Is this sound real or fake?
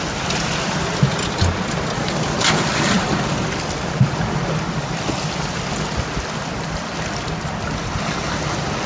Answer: real